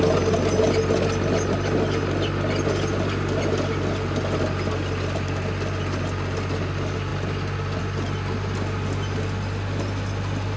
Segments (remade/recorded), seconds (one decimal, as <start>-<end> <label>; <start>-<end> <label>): 0.0-10.6 recorded